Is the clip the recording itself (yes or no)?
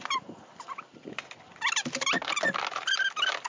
yes